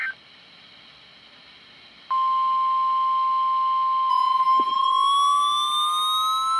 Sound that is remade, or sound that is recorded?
recorded